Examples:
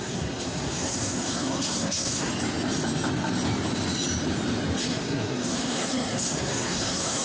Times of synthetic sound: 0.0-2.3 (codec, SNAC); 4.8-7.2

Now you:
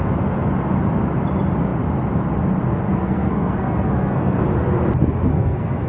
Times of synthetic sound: 2.9-4.4 (codec, SNAC); 5.3-5.9

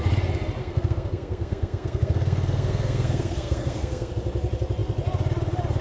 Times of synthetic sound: 0.6-4.1 (codec, SNAC)

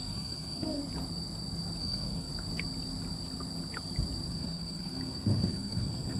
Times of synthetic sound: 0.0-0.8 (codec, SNAC); 1.8-2.3; 4.3-6.2

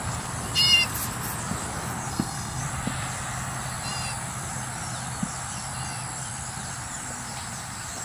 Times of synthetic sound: 2.1-2.6 (codec, SNAC)

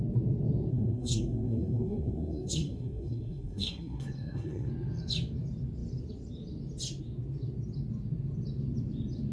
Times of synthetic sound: 0.7-4.7 (codec, SNAC)